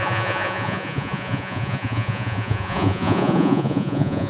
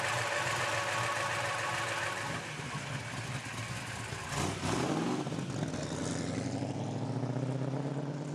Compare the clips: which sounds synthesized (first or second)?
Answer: first